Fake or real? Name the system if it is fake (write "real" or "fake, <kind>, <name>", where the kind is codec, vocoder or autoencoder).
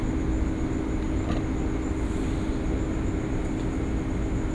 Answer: real